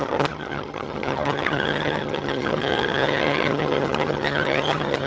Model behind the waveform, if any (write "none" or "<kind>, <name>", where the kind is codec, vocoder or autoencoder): vocoder, HiFi-GAN